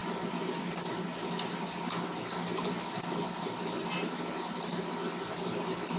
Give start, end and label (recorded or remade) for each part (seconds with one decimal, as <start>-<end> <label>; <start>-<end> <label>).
0.0-6.0 recorded